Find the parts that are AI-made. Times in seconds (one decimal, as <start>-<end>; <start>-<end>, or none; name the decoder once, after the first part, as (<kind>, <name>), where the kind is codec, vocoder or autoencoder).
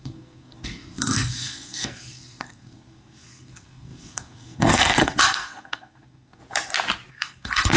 0.0-6.4 (codec, SNAC); 7.1-7.8